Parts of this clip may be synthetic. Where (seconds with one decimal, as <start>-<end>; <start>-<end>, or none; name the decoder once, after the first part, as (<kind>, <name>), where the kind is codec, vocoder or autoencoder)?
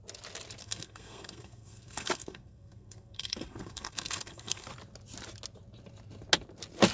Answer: 0.6-4.7 (codec, SNAC)